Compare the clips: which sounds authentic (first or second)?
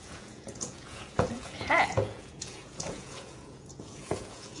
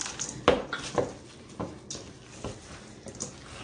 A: second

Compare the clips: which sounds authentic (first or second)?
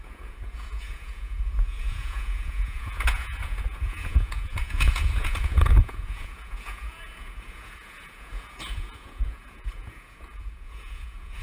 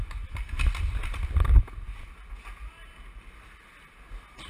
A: second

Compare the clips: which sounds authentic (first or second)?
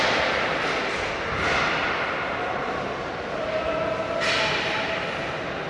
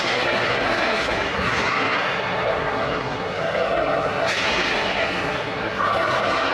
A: first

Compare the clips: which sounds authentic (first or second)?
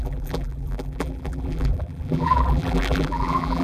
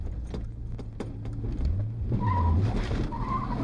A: second